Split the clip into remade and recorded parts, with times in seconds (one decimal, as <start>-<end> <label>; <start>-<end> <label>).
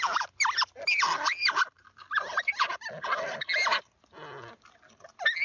0.0-5.4 recorded